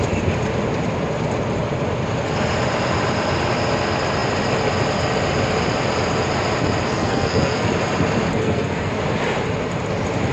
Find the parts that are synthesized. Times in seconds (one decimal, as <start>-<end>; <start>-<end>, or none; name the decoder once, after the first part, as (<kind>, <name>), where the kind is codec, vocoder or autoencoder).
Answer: 6.9-7.7 (codec, SNAC); 8.3-8.9